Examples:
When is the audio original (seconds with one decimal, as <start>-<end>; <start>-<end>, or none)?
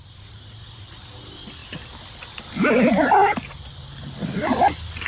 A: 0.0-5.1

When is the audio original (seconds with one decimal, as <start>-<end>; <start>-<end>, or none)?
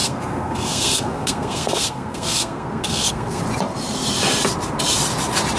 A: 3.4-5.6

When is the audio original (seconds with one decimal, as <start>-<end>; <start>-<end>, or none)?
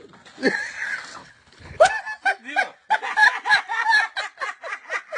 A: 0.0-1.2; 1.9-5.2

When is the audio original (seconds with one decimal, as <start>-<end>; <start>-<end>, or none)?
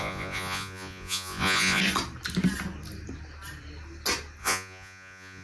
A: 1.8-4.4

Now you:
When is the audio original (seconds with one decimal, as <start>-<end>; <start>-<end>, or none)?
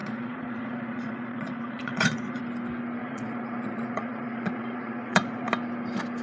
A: 2.4-3.0; 5.5-6.2